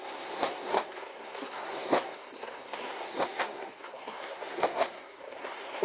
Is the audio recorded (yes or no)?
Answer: no